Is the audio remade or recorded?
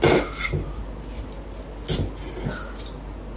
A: recorded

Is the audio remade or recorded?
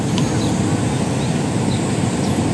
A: recorded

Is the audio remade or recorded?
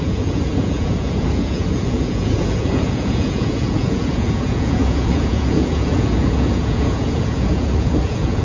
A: remade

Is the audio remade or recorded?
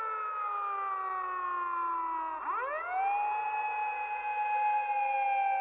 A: recorded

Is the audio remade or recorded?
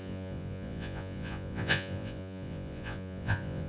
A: remade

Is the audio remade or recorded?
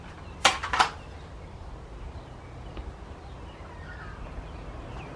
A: recorded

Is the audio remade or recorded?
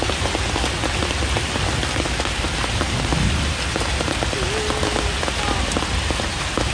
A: recorded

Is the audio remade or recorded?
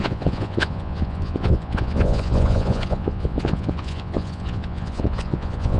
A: remade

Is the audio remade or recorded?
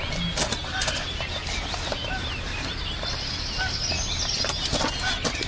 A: recorded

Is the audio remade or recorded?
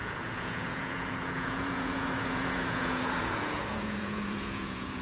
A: remade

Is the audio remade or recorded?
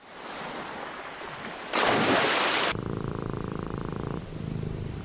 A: recorded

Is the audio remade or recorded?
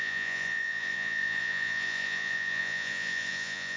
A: remade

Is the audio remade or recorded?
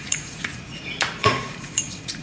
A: remade